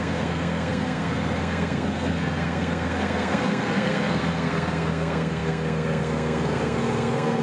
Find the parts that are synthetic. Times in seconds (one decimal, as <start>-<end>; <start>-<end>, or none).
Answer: 0.0-7.4